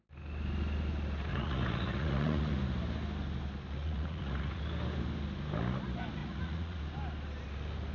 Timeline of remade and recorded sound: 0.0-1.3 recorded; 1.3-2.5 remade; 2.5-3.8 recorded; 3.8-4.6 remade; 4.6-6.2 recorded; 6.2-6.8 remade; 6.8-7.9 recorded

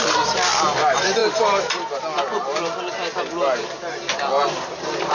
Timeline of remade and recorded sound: 0.0-5.1 recorded

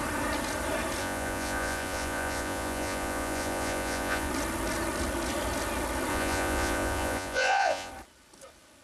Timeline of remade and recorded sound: 0.0-1.0 recorded; 1.0-4.3 remade; 4.3-6.1 recorded; 6.1-7.9 remade; 7.9-8.8 recorded

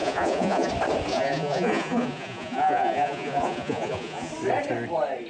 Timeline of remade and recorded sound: 0.0-0.7 remade; 0.7-1.1 recorded; 1.1-4.3 remade; 4.3-5.3 recorded

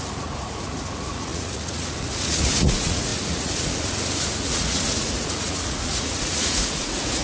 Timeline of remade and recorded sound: 0.0-7.2 remade

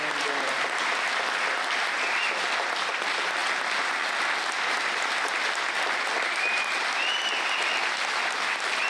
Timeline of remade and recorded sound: 0.0-8.9 recorded

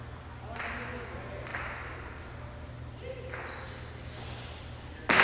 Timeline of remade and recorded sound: 0.0-5.2 recorded